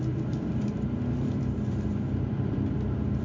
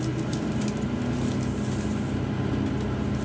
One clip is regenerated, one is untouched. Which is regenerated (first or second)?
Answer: first